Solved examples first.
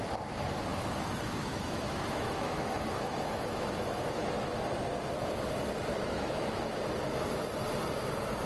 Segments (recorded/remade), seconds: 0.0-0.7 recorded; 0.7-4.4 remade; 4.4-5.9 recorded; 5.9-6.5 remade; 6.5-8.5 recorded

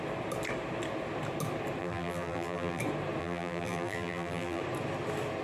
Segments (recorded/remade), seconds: 0.0-1.8 recorded; 1.8-2.8 remade; 2.8-3.2 recorded; 3.2-4.6 remade; 4.6-5.4 recorded

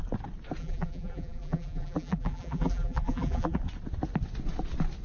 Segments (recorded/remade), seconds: 0.0-0.6 recorded; 0.6-3.6 remade; 3.6-5.0 recorded

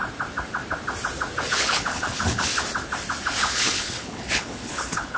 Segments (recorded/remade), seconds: 0.0-1.5 recorded; 1.5-2.5 remade; 2.5-3.4 recorded; 3.4-5.2 remade

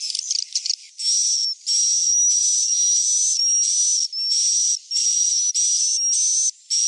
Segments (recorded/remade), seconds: 0.0-6.9 recorded

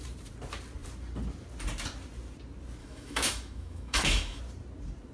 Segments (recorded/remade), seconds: 0.0-2.8 recorded; 2.8-4.4 remade; 4.4-5.1 recorded